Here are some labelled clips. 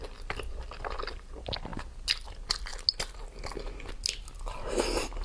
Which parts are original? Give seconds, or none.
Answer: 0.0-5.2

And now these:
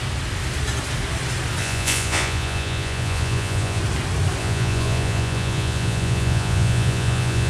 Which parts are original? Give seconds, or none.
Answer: 0.0-1.6; 3.8-4.4

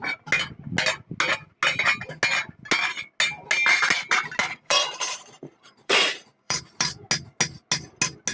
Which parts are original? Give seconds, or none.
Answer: 0.0-4.4; 6.9-8.3

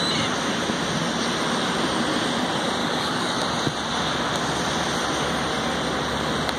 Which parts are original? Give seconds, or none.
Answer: 0.0-2.8; 3.4-6.6